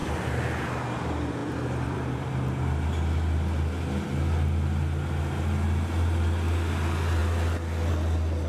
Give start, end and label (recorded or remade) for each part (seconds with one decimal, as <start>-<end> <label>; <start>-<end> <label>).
0.0-0.6 remade; 0.6-1.4 recorded; 1.4-2.3 remade; 2.3-8.5 recorded